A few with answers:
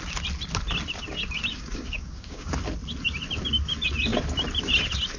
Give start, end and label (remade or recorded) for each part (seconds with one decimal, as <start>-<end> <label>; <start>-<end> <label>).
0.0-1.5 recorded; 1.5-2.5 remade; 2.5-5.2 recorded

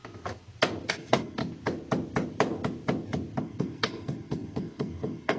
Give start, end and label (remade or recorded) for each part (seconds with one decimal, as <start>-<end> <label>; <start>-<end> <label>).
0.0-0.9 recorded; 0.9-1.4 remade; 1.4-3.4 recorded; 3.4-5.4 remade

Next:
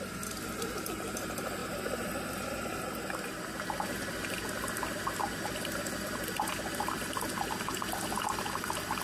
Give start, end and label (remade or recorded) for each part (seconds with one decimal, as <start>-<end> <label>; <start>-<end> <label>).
0.0-1.6 recorded; 1.6-2.8 remade; 2.8-9.0 recorded

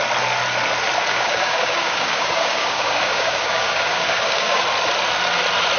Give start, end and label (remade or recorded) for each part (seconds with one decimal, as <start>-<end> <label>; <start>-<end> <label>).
0.0-1.1 recorded; 1.1-4.6 remade; 4.6-5.8 recorded

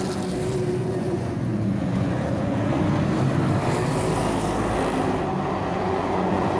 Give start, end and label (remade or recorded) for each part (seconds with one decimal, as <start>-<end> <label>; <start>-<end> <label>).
0.0-0.8 recorded; 0.8-2.8 remade; 2.8-5.7 recorded; 5.7-6.6 remade

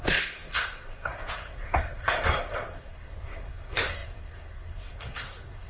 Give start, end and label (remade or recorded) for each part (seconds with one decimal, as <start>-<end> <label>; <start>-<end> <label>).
0.0-5.7 remade

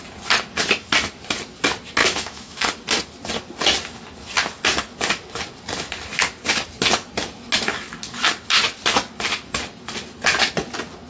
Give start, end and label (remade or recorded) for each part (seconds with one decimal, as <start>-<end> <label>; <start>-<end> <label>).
0.0-2.0 recorded; 2.0-2.6 remade; 2.6-11.1 recorded

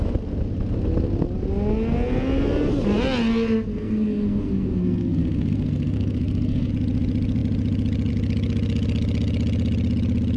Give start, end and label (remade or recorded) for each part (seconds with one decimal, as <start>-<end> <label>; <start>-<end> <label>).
0.0-3.7 recorded; 3.7-6.7 remade; 6.7-10.4 recorded